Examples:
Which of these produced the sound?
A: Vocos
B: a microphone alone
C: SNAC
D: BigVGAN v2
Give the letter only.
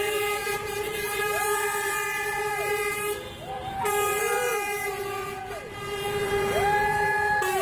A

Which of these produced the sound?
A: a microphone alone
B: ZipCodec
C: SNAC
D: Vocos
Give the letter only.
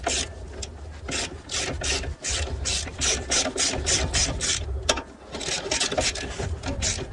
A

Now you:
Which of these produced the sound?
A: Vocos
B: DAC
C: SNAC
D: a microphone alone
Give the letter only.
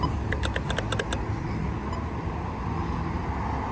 D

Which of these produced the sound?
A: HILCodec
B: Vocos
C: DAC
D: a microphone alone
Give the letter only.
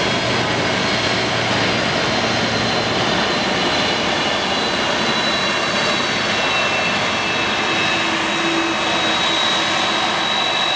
D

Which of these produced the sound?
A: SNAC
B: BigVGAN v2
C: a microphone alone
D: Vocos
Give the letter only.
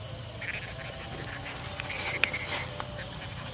C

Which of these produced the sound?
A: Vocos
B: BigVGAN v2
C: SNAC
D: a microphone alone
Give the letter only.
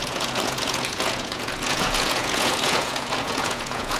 A